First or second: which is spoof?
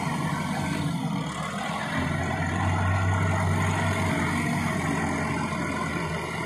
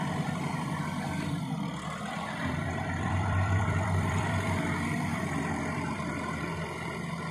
second